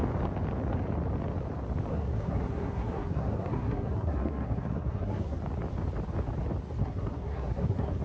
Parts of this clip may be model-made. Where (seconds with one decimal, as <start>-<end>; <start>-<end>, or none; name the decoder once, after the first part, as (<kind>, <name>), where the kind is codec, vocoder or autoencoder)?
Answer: 1.9-5.4 (codec, SNAC); 6.8-8.0